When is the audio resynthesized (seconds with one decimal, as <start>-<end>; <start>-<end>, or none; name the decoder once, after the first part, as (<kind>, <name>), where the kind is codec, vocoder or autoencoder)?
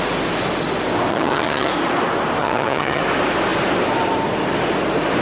1.1-1.7 (vocoder, HiFi-GAN); 2.4-3.0